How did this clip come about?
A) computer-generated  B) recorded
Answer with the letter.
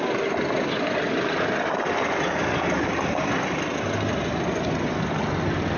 B